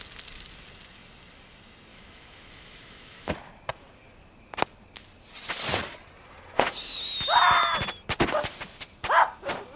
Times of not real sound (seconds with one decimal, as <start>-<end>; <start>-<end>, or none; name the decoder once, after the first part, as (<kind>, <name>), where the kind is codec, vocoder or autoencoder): 1.9-3.3 (autoencoder, DAC-VAE)